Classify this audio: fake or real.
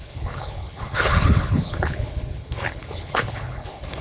fake